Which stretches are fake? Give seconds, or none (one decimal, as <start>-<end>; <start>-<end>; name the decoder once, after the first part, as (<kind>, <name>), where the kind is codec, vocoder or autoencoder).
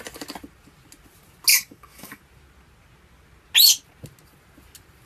1.5-2.2 (codec, DAC)